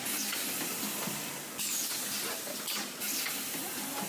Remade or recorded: recorded